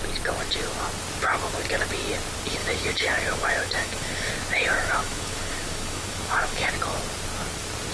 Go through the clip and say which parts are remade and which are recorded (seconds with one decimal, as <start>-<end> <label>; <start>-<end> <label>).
0.0-2.6 recorded; 2.6-4.3 remade; 4.3-4.7 recorded; 4.7-6.7 remade; 6.7-7.9 recorded